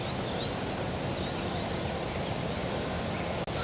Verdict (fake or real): real